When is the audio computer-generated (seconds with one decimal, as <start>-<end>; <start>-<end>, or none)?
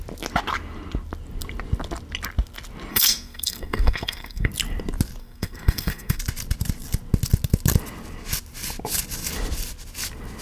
2.9-4.5; 5.2-6.2